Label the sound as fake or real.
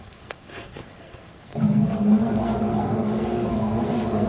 fake